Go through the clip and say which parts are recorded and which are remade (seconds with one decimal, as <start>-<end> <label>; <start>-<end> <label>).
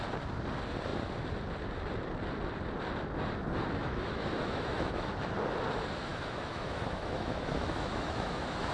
0.0-3.8 recorded; 3.8-5.1 remade; 5.1-6.1 recorded; 6.1-8.7 remade